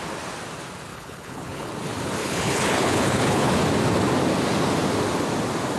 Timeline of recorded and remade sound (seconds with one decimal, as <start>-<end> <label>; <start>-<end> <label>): 0.0-0.9 recorded; 0.9-1.7 remade; 1.7-2.2 recorded; 2.2-3.6 remade; 3.6-5.8 recorded